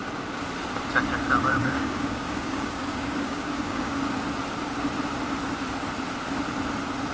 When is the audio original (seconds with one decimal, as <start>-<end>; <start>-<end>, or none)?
0.0-1.5; 4.0-7.1